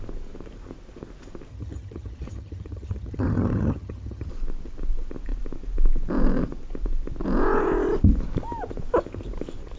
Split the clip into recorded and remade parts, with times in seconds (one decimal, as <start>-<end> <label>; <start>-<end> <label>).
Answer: 0.0-1.5 recorded; 1.5-4.3 remade; 4.3-9.8 recorded